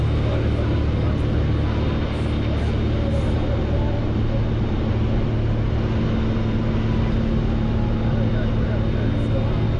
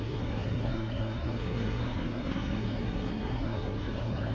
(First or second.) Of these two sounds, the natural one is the first